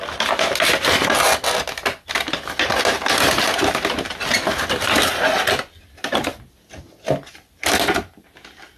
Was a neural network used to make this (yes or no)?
no